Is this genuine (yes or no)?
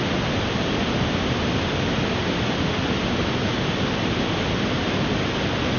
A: yes